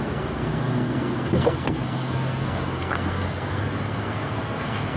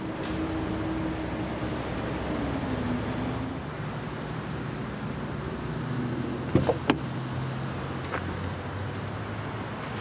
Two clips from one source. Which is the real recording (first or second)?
second